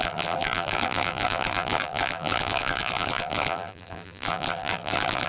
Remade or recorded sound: remade